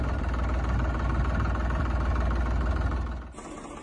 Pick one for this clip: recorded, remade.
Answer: recorded